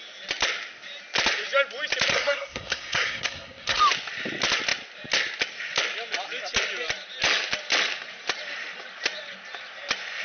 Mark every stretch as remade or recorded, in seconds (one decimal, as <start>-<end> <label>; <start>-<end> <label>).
0.0-2.1 recorded; 2.1-3.8 remade; 3.8-10.2 recorded